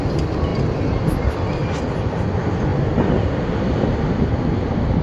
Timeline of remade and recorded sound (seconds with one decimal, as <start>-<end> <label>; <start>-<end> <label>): 0.0-5.0 recorded